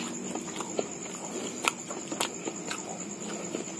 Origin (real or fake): real